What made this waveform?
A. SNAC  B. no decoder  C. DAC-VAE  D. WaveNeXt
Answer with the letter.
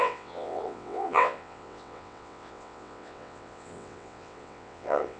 D